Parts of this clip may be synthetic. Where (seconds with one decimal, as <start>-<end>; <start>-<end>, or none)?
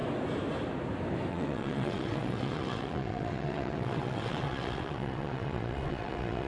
1.3-6.5